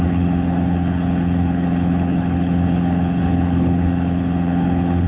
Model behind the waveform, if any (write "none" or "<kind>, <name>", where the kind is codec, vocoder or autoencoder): codec, HILCodec